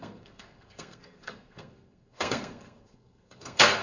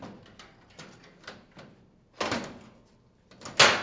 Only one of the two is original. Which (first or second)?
second